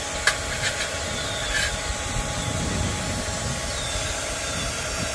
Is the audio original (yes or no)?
yes